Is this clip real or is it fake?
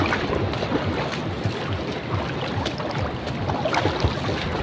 real